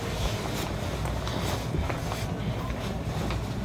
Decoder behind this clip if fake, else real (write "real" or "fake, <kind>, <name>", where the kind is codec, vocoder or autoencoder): real